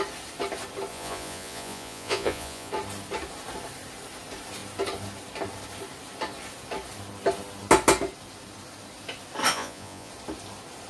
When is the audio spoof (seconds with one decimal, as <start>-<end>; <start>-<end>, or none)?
0.9-2.7; 9.5-10.1